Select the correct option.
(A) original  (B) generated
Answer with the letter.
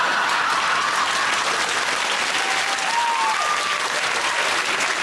A